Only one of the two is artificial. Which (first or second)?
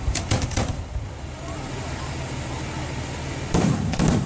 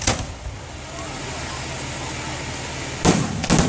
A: first